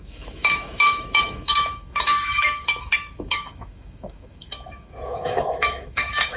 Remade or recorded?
remade